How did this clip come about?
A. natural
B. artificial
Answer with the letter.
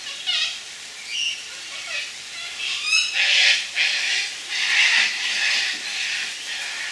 A